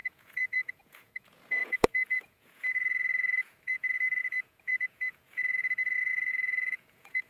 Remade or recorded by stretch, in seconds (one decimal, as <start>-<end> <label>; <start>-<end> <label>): 0.0-7.3 remade